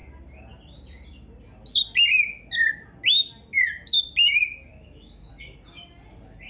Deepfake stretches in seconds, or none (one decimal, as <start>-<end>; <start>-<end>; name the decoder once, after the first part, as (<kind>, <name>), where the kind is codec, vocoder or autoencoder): 4.7-5.3 (autoencoder, DAC-VAE)